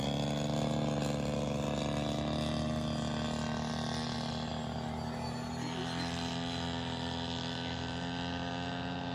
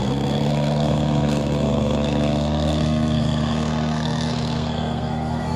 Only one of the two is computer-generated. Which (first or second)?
second